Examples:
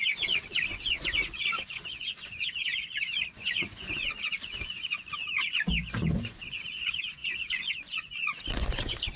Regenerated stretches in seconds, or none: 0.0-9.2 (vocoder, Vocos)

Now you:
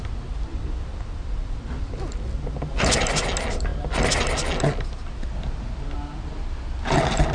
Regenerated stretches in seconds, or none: none

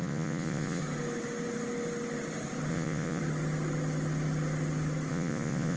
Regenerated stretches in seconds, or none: 0.0-0.8 (vocoder, Vocos); 2.7-3.2; 5.1-5.8

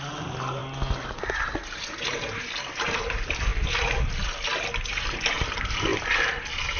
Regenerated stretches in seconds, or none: none

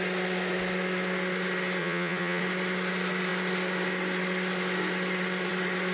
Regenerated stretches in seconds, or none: 1.8-2.4 (vocoder, Vocos)

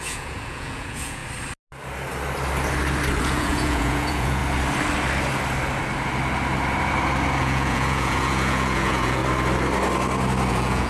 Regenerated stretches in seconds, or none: 0.0-1.2 (vocoder, Vocos); 3.2-4.4; 7.4-9.2; 10.5-10.9